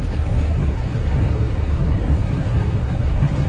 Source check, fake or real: fake